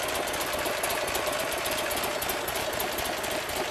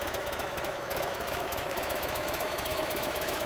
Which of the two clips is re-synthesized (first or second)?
second